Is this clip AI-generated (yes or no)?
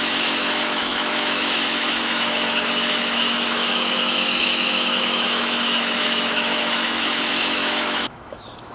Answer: yes